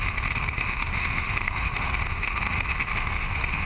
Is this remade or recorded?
remade